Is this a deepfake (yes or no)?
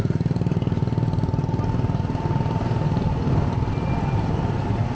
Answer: no